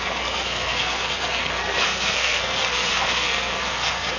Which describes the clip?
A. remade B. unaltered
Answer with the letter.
A